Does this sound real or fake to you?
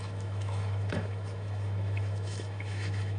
fake